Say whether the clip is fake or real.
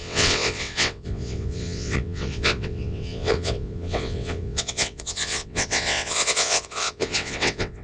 fake